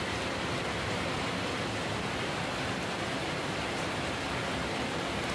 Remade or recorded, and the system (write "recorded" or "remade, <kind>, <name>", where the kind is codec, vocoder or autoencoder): recorded